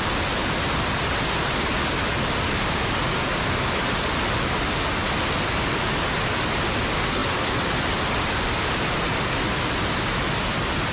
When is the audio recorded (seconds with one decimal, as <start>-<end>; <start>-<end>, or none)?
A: 0.0-10.9